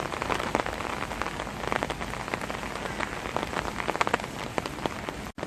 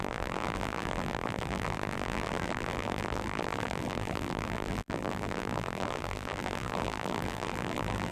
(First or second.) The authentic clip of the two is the first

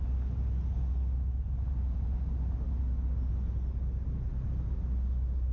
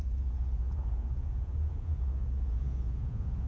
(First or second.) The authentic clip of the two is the first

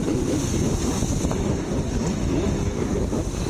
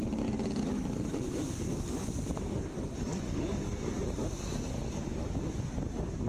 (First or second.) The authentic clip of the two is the second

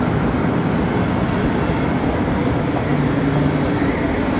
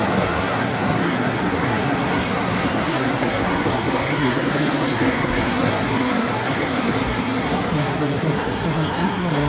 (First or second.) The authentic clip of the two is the first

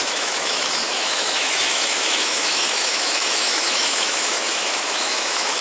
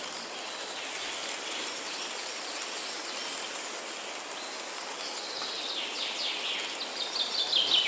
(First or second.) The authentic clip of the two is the second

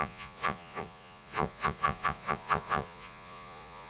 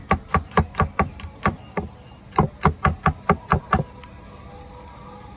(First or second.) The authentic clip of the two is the second